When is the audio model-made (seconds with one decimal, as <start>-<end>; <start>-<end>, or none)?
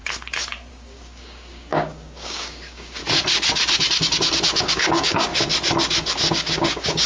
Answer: 0.7-3.0; 4.6-5.3; 6.3-7.1